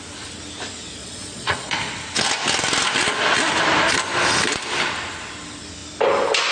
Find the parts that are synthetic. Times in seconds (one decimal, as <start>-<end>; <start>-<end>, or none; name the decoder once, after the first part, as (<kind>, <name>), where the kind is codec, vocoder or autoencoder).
1.0-1.9 (vocoder, Vocos)